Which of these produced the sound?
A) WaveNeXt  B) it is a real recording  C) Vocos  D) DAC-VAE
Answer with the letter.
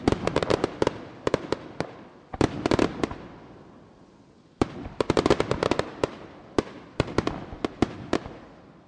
B